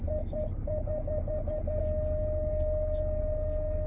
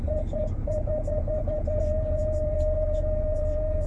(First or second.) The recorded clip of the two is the first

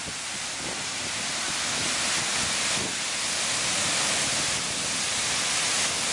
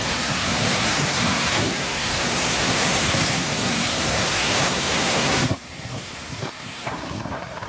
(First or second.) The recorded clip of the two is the first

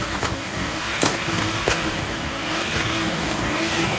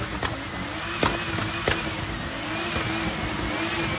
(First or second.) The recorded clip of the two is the second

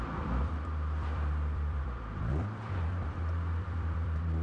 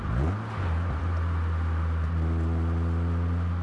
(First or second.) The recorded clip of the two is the second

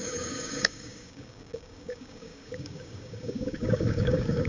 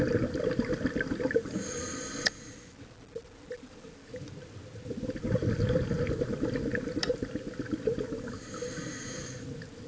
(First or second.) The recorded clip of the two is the second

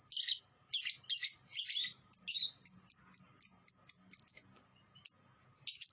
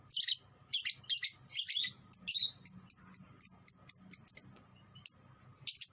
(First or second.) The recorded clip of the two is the first